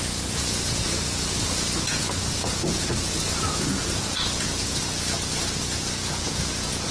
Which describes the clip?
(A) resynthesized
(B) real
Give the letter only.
A